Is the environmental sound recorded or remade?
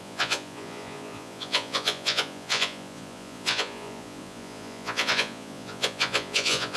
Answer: remade